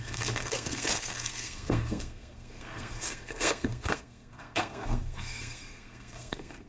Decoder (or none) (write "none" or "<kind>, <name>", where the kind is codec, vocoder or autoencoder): codec, SNAC